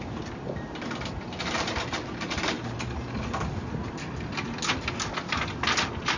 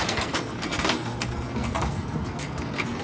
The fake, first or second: second